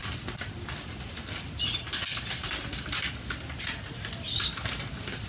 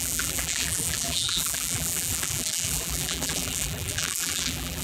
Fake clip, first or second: second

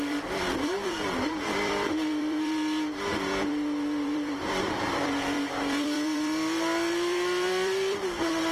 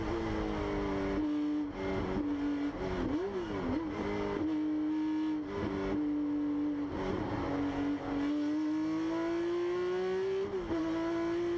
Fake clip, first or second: first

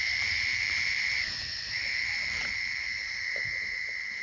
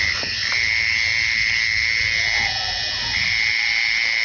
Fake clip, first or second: first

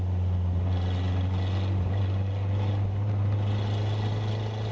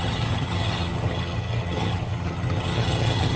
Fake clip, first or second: second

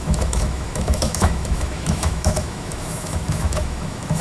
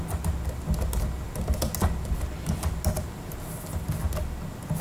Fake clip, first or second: first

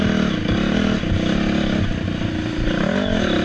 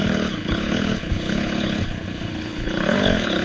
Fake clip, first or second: second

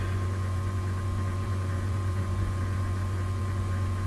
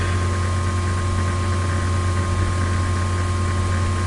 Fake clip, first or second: first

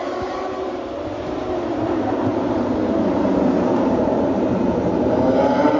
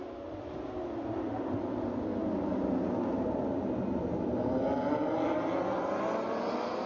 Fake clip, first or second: first